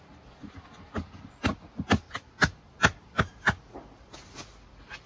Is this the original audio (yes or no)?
yes